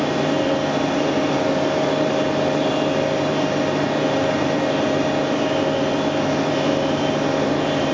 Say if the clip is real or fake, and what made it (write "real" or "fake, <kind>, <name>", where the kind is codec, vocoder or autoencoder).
real